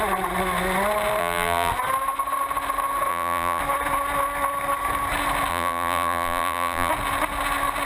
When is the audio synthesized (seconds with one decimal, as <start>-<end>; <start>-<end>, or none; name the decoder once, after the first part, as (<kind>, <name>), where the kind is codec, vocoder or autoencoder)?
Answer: 1.2-1.7 (vocoder, BigVGAN v2); 3.1-3.6; 5.5-6.9